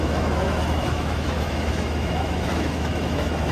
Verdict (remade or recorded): remade